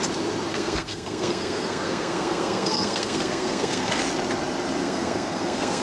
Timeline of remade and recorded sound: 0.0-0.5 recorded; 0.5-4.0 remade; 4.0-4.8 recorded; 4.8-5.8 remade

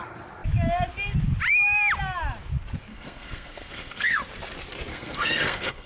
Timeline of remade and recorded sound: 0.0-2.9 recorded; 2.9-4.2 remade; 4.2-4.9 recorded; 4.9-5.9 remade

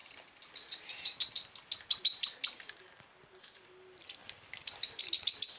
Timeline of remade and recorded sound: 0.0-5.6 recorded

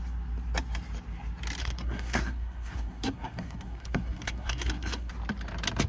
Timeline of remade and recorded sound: 0.0-1.6 recorded; 1.6-5.1 remade; 5.1-5.9 recorded

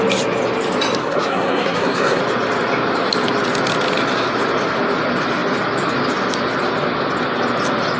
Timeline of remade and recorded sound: 0.0-1.0 recorded; 1.0-2.2 remade; 2.2-8.0 recorded

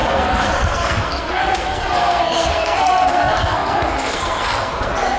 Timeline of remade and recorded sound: 0.0-5.2 remade